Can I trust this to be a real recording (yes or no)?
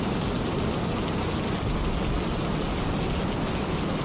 yes